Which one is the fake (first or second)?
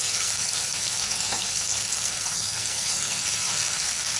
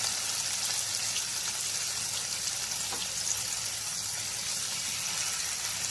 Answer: first